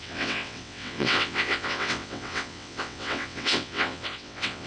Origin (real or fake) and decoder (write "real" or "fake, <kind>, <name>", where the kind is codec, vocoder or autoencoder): fake, vocoder, WaveNeXt